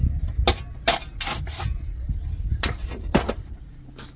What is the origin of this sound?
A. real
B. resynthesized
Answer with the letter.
A